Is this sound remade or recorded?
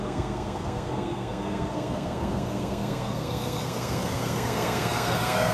remade